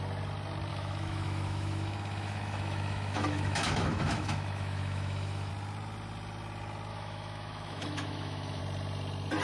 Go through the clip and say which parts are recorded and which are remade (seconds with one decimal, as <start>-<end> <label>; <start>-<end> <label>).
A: 0.0-0.7 recorded; 0.7-5.5 remade; 5.5-6.9 recorded; 6.9-8.6 remade; 8.6-9.4 recorded